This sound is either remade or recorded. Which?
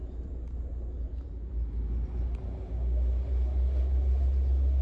recorded